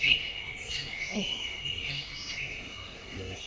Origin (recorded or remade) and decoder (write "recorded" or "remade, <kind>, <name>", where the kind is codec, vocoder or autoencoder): remade, codec, SNAC